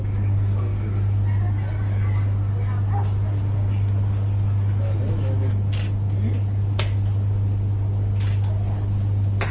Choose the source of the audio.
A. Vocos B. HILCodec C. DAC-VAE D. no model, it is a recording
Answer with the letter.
D